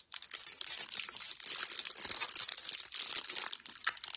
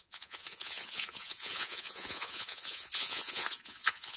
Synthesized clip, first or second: second